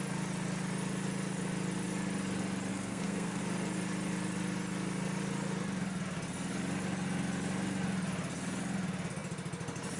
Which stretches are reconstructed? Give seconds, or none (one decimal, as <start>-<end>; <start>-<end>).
2.7-3.4